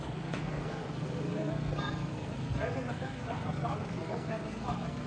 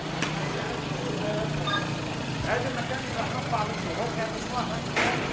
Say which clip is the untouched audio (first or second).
second